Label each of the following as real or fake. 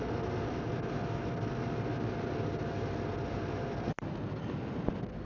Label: real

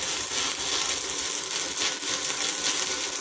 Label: real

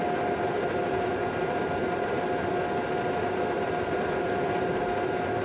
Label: real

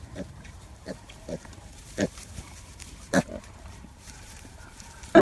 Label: fake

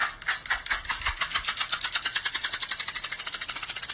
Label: real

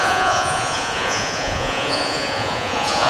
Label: fake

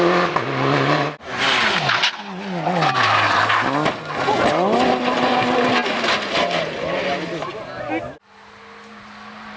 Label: real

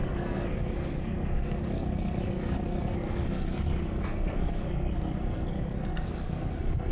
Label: fake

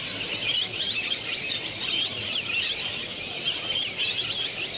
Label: real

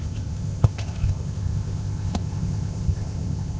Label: fake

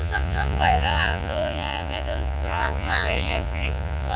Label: fake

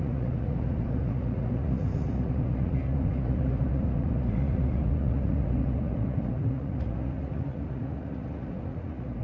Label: fake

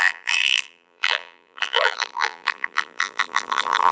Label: fake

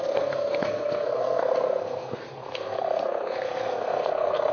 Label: fake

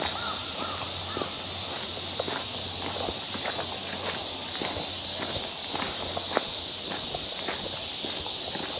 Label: real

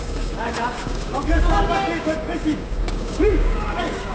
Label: fake